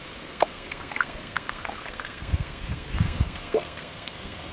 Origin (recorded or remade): remade